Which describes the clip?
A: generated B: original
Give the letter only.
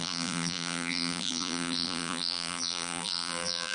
A